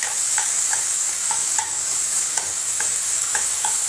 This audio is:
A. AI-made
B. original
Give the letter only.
A